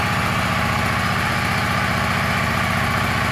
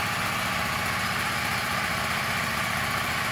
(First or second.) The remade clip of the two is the second